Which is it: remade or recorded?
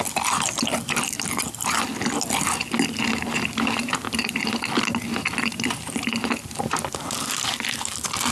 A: recorded